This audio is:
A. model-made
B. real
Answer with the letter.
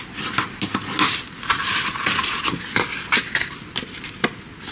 B